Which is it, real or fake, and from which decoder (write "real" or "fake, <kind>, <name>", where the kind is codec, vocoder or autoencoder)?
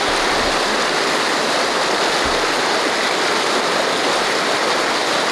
real